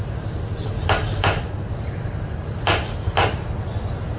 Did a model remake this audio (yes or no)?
no